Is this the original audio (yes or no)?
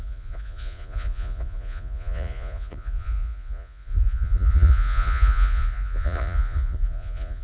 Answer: no